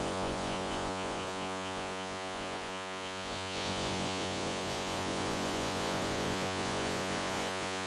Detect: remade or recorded remade